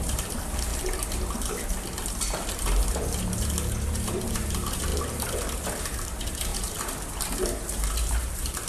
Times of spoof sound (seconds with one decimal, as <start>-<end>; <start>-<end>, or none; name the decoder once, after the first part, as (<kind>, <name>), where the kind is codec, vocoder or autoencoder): 0.0-0.7 (vocoder, BigVGAN v2); 3.9-4.9; 5.8-8.7